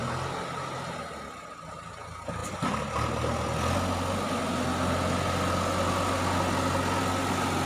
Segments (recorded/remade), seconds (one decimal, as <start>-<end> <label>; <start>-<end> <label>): 0.0-7.7 recorded